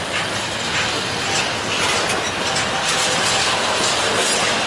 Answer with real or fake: real